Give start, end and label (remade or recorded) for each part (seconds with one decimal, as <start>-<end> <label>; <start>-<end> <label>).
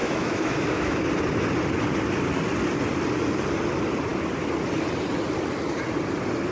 0.0-1.0 remade; 1.0-6.5 recorded